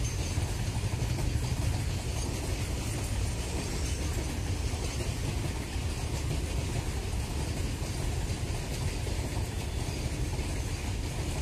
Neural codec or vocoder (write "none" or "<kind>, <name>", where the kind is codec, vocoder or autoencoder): none